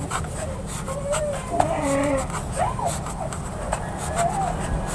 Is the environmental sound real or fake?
real